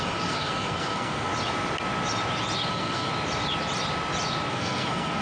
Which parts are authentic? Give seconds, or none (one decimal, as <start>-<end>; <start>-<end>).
1.3-2.7; 3.1-4.5